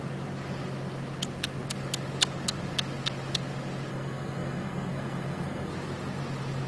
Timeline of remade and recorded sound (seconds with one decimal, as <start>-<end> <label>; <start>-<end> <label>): 0.0-3.9 recorded; 3.9-5.7 remade; 5.7-6.7 recorded